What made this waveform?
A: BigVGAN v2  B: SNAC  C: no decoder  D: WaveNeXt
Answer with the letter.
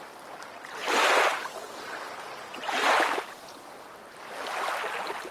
C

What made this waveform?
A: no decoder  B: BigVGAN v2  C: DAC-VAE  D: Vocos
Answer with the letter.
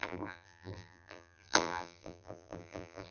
B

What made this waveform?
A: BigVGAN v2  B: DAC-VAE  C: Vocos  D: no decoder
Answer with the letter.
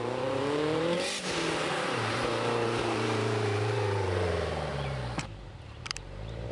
A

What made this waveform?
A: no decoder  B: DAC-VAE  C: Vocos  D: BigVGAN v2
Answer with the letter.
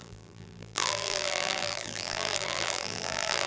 D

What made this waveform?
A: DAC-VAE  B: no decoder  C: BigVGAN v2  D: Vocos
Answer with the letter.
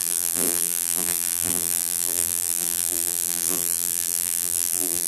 C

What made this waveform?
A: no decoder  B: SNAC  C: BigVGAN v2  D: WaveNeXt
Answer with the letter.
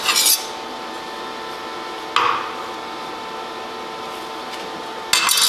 A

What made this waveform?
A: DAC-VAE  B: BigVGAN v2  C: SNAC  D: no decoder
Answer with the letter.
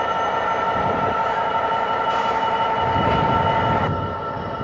B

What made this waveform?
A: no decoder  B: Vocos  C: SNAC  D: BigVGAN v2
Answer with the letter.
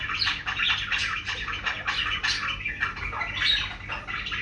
A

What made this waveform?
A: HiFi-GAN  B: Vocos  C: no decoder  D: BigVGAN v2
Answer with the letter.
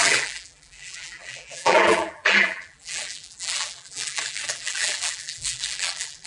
D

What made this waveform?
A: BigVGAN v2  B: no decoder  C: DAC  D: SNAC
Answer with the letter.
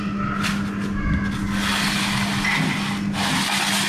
B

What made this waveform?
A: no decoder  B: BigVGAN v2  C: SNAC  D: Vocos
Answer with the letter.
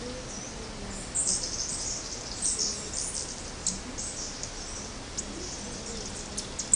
A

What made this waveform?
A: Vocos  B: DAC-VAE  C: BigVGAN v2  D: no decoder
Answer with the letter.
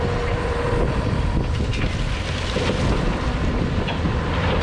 C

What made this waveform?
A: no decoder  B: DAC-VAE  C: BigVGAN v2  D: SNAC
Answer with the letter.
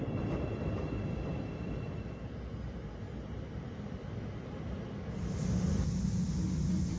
A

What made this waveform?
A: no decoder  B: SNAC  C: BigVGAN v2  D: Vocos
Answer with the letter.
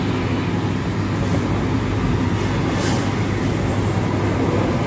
A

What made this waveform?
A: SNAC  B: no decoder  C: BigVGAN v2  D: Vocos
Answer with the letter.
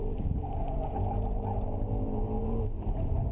C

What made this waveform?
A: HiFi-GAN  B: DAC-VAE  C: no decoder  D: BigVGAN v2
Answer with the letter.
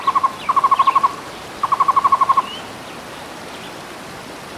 C